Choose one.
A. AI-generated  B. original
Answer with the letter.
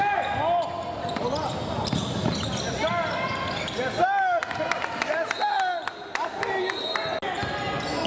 B